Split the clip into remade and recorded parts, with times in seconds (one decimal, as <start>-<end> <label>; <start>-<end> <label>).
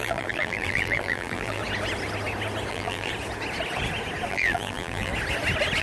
0.0-1.6 remade; 1.6-2.7 recorded; 2.7-3.1 remade; 3.1-4.3 recorded; 4.3-5.1 remade; 5.1-5.8 recorded